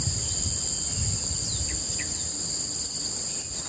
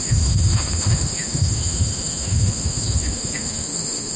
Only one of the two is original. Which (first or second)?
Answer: first